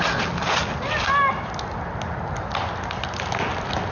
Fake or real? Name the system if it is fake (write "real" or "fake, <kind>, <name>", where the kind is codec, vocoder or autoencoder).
real